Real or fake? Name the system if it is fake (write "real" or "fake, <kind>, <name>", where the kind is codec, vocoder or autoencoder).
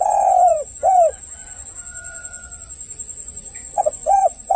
fake, vocoder, Vocos